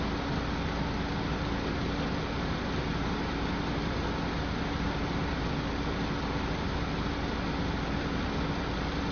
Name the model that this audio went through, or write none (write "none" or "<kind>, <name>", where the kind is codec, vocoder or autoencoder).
none